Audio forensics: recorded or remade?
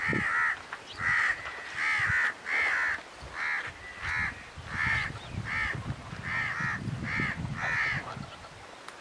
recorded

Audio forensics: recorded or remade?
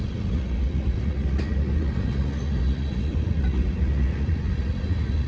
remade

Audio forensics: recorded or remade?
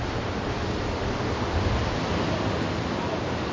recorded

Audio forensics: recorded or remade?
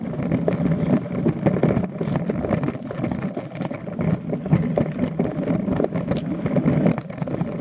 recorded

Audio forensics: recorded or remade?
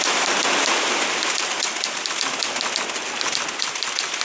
recorded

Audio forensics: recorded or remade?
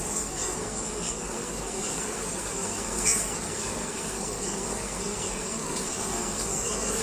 remade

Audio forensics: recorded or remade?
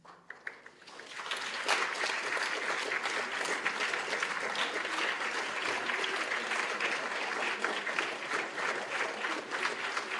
recorded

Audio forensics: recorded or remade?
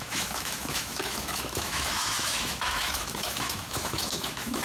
remade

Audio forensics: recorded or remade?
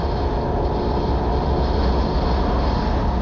recorded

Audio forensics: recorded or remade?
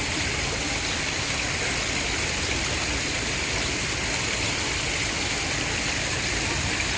recorded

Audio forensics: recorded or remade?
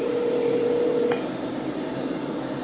remade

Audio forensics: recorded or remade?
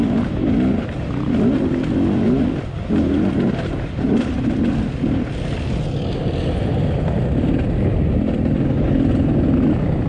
recorded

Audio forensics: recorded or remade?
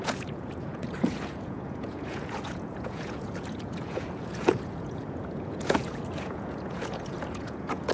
remade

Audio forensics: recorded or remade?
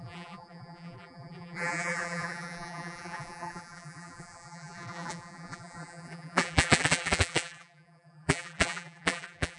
remade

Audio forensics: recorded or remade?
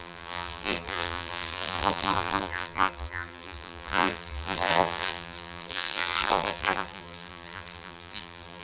remade